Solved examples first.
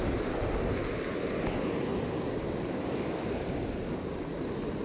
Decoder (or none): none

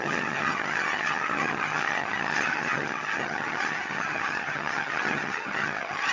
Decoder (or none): vocoder, HiFi-GAN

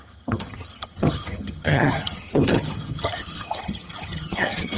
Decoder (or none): vocoder, HiFi-GAN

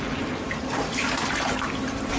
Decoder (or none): none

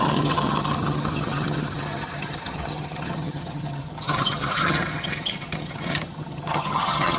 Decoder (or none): vocoder, HiFi-GAN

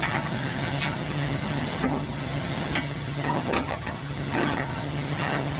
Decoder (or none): vocoder, HiFi-GAN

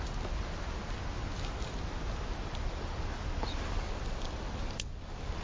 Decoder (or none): none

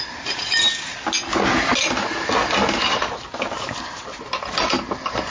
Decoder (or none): none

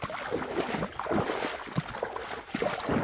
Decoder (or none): none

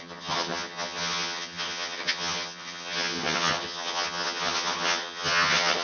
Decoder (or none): vocoder, HiFi-GAN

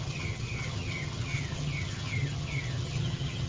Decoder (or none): vocoder, HiFi-GAN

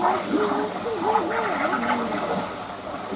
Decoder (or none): none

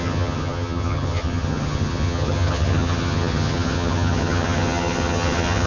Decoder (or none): vocoder, HiFi-GAN